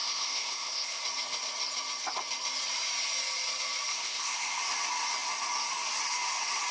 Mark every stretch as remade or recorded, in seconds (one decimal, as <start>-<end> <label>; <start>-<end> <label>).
0.0-1.0 remade; 1.0-3.9 recorded; 3.9-4.6 remade; 4.6-6.7 recorded